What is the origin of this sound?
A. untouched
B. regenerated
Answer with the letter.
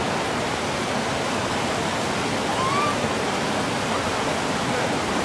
A